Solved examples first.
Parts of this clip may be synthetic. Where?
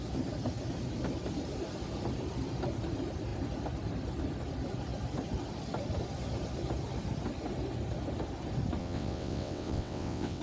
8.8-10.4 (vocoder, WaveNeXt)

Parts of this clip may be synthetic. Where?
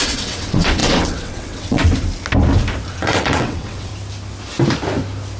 0.0-1.8 (vocoder, WaveNeXt); 2.9-3.9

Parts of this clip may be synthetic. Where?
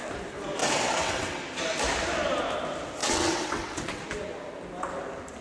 0.6-1.4 (vocoder, WaveNeXt); 3.0-4.0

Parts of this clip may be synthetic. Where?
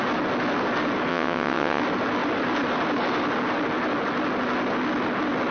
1.1-1.8 (vocoder, WaveNeXt)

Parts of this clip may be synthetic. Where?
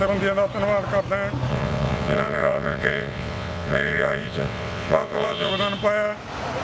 1.5-5.5 (vocoder, WaveNeXt)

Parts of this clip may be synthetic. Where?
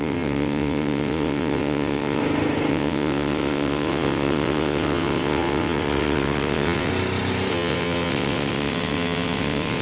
0.0-2.2 (vocoder, WaveNeXt); 2.7-6.9; 7.5-9.8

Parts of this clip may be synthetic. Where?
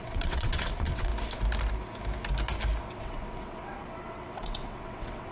0.0-1.1 (vocoder, WaveNeXt); 2.9-5.3